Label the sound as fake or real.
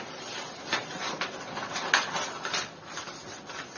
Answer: real